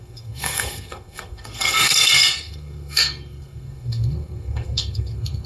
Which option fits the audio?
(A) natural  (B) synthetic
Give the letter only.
B